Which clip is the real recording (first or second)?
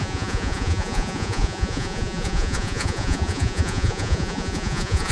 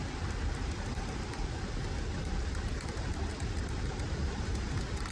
second